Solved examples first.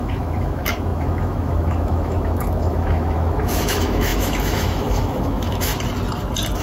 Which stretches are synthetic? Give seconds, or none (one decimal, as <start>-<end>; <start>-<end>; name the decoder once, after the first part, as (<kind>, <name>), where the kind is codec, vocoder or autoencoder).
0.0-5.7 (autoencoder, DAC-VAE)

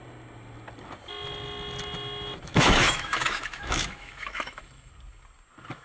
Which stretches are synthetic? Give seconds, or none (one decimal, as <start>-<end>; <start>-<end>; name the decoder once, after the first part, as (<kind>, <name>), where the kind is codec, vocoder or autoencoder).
2.5-4.9 (autoencoder, DAC-VAE)

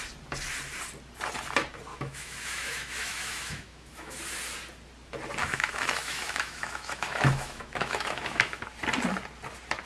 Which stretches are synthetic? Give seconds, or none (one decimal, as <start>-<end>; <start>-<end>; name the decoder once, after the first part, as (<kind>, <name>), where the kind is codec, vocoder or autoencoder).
1.9-4.2 (autoencoder, DAC-VAE); 5.4-8.6

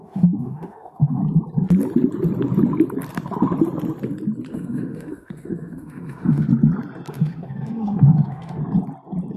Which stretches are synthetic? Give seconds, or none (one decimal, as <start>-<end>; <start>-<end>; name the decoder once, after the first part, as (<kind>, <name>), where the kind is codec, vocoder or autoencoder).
0.0-1.2 (autoencoder, DAC-VAE); 4.5-6.5; 7.1-8.6